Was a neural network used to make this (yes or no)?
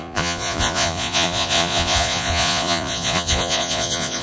yes